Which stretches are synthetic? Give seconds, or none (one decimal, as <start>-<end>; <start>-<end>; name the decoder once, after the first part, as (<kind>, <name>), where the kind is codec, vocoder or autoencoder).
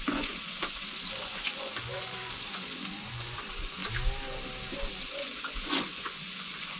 0.0-3.8 (vocoder, Vocos); 5.0-6.8